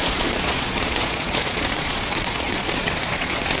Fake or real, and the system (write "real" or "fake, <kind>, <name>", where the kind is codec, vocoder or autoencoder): fake, vocoder, Vocos